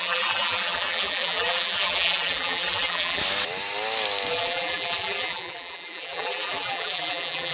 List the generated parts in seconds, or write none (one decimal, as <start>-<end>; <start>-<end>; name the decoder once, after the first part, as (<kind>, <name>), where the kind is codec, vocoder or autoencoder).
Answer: 0.0-3.2 (vocoder, BigVGAN v2); 4.3-7.5